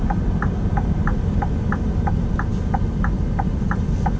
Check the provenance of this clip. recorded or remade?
recorded